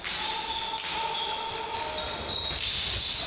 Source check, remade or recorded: recorded